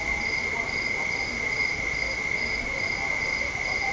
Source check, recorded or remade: recorded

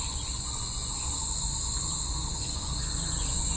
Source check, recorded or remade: remade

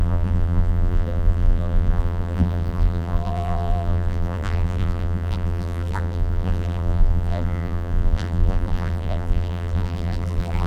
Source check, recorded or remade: remade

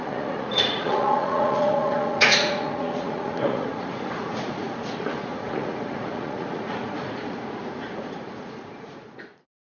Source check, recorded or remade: remade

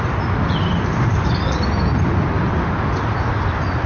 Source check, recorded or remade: recorded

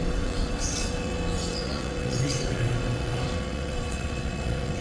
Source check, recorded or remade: remade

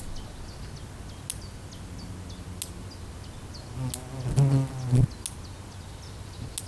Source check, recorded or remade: recorded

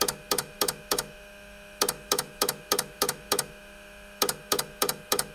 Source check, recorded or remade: remade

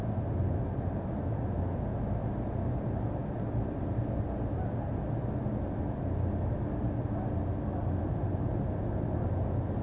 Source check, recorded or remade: recorded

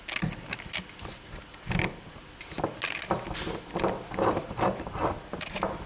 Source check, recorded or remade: recorded